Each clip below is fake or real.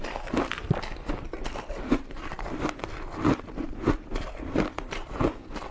fake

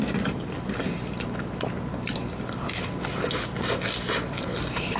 real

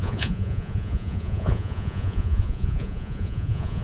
fake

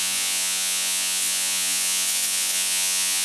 fake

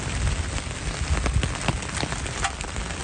real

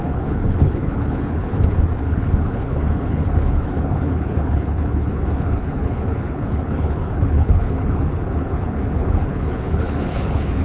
fake